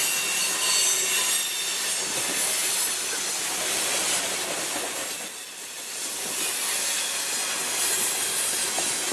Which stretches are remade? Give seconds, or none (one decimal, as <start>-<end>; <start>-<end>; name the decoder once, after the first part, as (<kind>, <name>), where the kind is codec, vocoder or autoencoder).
none